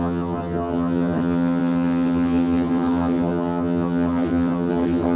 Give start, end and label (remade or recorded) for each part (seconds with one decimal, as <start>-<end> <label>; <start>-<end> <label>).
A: 0.0-5.2 remade